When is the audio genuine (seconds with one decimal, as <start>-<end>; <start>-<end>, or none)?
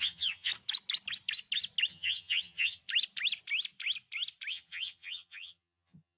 0.5-1.9; 2.8-4.5